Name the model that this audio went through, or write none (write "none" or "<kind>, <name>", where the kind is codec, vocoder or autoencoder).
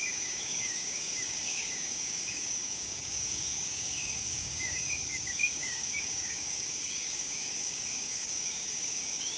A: codec, DAC